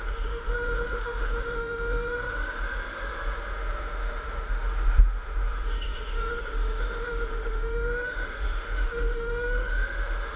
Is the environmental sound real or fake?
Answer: fake